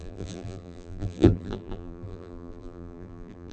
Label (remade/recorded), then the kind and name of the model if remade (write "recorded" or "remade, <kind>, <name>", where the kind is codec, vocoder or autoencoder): remade, vocoder, BigVGAN v2